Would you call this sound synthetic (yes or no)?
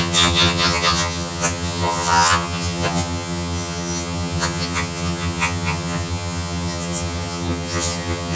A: yes